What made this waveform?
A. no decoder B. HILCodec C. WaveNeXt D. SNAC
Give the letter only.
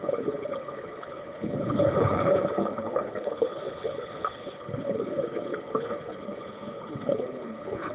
B